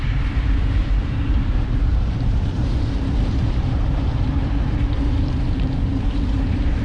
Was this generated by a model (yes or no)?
yes